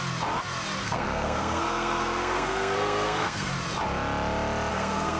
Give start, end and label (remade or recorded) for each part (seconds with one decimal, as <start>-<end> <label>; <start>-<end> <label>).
0.0-0.8 recorded; 0.8-3.5 remade; 3.5-4.7 recorded; 4.7-5.2 remade

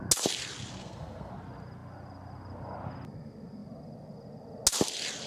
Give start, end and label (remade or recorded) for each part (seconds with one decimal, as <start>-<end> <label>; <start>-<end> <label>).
0.0-0.8 recorded; 0.8-1.3 remade; 1.3-5.3 recorded

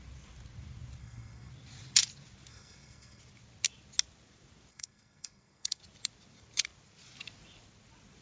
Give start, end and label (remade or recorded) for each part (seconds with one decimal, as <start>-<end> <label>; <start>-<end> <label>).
0.0-1.0 recorded; 1.0-1.5 remade; 1.5-2.5 recorded; 2.5-3.2 remade; 3.2-4.7 recorded; 4.7-5.8 remade; 5.8-8.2 recorded

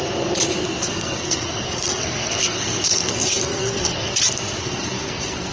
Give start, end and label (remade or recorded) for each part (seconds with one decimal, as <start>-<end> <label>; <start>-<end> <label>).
0.0-0.8 recorded; 0.8-4.1 remade; 4.1-4.6 recorded; 4.6-5.5 remade